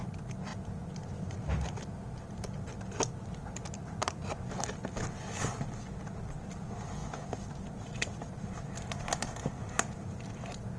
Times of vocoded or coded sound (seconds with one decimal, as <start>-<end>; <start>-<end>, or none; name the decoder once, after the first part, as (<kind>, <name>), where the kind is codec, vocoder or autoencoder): none